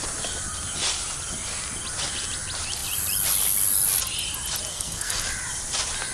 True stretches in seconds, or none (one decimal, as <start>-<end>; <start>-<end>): 0.0-4.7; 5.2-6.1